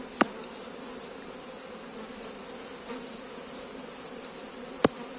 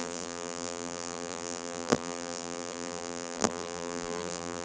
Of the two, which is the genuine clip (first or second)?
first